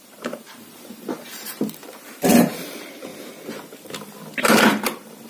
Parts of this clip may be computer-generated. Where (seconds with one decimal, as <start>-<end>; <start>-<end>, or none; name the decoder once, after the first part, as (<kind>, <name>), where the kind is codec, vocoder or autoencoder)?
0.0-3.1 (vocoder, BigVGAN v2); 4.4-5.3